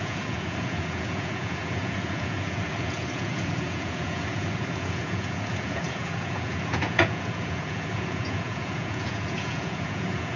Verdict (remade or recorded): remade